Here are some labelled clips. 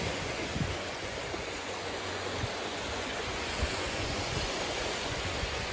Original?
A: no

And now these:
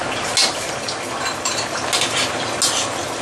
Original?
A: yes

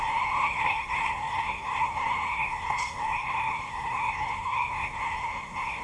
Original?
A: no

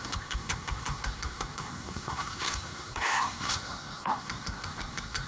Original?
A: no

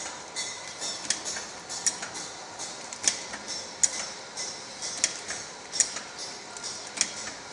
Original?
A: yes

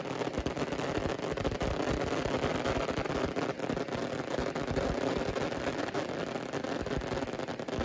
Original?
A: yes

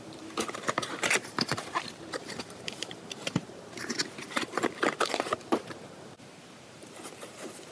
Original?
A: no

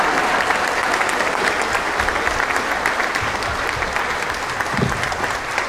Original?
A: yes